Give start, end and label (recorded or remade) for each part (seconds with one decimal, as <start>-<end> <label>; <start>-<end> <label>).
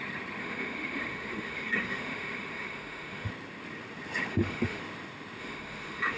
0.0-0.4 recorded; 0.4-3.3 remade; 3.3-4.3 recorded; 4.3-4.8 remade; 4.8-5.4 recorded; 5.4-6.2 remade